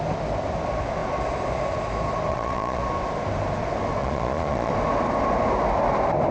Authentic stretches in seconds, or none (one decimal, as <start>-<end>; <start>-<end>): 0.0-2.3; 2.8-4.0; 4.7-6.3